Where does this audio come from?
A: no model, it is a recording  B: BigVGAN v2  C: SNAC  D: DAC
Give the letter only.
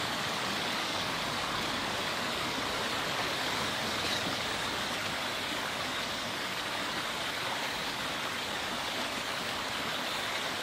D